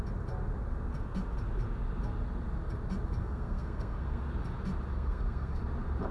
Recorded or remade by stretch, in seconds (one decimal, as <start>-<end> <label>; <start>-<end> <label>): 0.0-3.2 recorded; 3.2-4.2 remade; 4.2-4.9 recorded; 4.9-5.6 remade; 5.6-6.1 recorded